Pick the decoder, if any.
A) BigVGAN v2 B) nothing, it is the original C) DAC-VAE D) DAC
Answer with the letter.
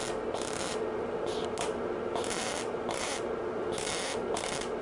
B